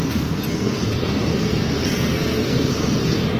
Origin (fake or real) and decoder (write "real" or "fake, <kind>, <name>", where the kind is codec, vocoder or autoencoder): fake, codec, SNAC